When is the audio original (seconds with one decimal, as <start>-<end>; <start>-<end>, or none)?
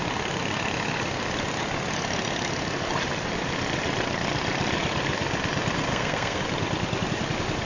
0.0-5.9; 6.4-7.7